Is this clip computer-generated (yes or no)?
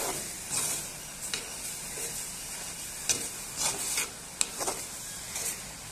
no